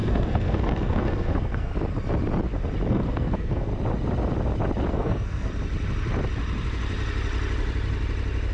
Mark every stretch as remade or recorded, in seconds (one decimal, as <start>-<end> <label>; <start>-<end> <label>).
0.0-1.7 remade; 1.7-2.9 recorded; 2.9-3.7 remade; 3.7-4.9 recorded; 4.9-5.5 remade; 5.5-8.5 recorded